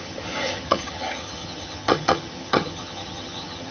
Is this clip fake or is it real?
fake